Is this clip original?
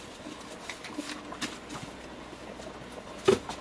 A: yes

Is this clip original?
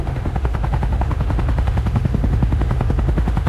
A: no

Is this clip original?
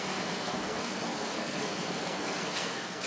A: no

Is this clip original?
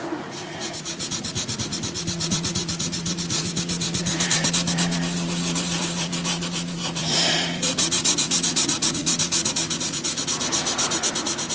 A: no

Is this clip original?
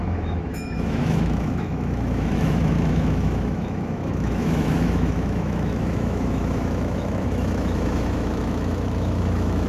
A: no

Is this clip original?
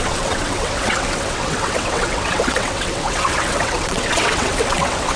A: no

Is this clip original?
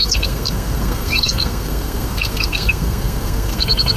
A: no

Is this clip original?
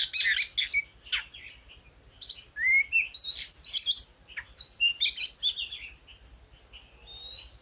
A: yes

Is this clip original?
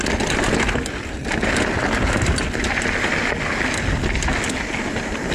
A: yes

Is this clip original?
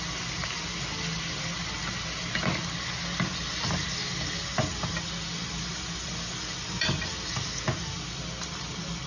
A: yes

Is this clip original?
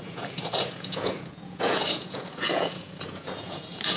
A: no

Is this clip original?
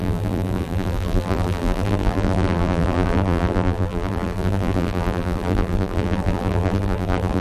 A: no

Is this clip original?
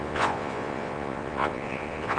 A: no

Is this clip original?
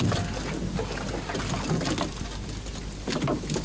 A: yes